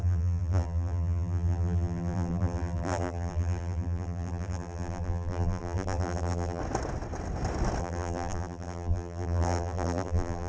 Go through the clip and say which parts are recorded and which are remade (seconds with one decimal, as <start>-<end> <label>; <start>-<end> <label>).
0.0-6.6 remade; 6.6-7.8 recorded; 7.8-10.5 remade